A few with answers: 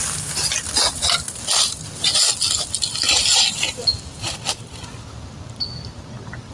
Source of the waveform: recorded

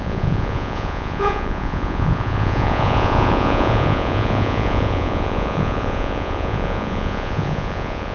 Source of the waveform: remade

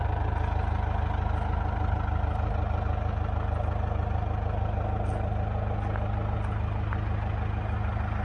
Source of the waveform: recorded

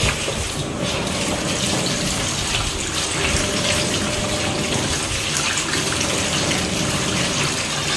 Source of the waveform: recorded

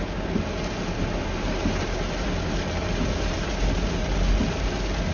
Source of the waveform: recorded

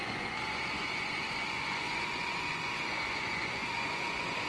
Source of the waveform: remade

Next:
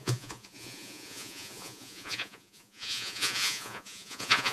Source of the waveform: remade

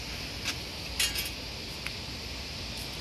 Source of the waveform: recorded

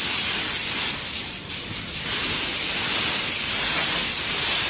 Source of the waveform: recorded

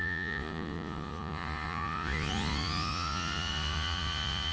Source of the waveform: remade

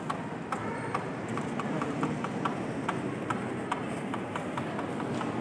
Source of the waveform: recorded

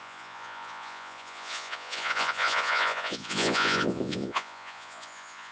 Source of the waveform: remade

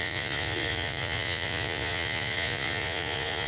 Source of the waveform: remade